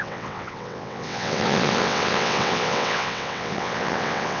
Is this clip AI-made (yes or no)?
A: yes